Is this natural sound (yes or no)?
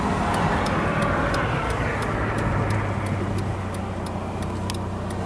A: yes